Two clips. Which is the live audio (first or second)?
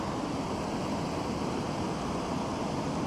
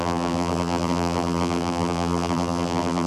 first